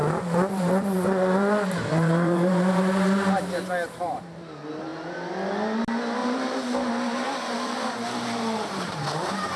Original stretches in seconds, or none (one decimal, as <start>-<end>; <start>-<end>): 4.2-6.2; 9.0-9.6